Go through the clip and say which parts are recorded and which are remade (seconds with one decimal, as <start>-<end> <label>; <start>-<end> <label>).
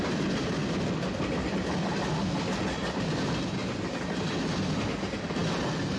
0.0-6.0 recorded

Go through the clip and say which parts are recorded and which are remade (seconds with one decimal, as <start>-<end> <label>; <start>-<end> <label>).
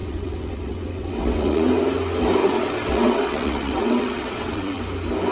0.0-1.7 remade; 1.7-2.4 recorded; 2.4-4.8 remade; 4.8-5.3 recorded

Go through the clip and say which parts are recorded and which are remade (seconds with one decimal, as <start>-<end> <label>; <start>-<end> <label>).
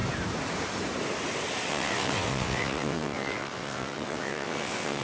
0.0-1.7 recorded; 1.7-5.0 remade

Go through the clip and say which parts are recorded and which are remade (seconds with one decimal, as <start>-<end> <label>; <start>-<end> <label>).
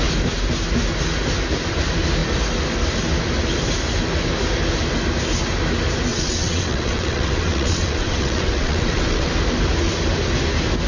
0.0-6.1 recorded; 6.1-9.3 remade; 9.3-10.9 recorded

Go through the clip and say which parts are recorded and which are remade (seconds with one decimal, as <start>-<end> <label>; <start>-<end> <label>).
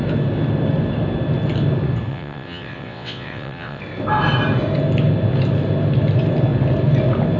0.0-2.1 recorded; 2.1-3.8 remade; 3.8-7.4 recorded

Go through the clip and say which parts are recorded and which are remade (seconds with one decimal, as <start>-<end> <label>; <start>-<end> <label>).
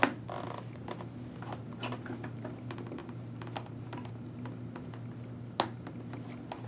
0.0-6.7 recorded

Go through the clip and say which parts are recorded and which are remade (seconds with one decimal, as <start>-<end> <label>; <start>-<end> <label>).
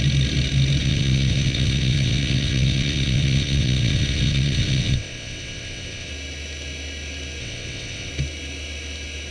0.0-0.8 recorded; 0.8-6.1 remade; 6.1-7.4 recorded; 7.4-8.1 remade; 8.1-9.3 recorded